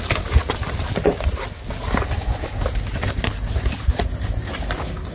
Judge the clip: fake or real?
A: real